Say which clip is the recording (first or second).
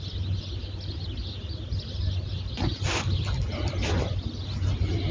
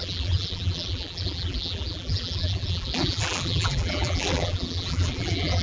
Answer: first